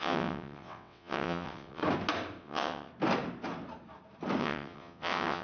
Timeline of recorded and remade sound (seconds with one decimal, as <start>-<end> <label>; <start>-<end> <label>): 0.0-1.8 remade; 1.8-2.4 recorded; 2.4-2.9 remade; 2.9-4.4 recorded; 4.4-5.4 remade